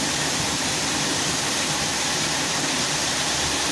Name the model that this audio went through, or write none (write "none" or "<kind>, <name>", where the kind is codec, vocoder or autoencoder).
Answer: vocoder, BigVGAN v2